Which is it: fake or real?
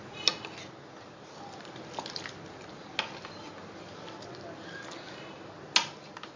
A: real